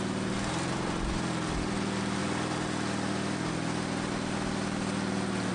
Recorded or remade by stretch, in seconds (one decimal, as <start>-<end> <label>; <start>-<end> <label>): 0.0-5.5 recorded